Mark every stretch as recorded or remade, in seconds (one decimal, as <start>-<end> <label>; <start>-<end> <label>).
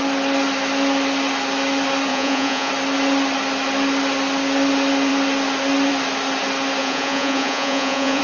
0.0-2.1 recorded; 2.1-2.7 remade; 2.7-6.8 recorded; 6.8-8.2 remade